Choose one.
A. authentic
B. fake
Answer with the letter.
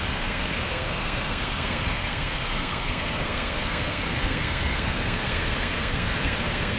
B